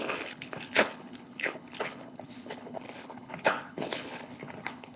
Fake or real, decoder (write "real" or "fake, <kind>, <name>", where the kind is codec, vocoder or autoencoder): fake, codec, HILCodec